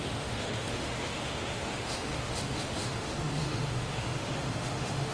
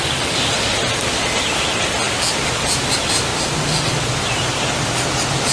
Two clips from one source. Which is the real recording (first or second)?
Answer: second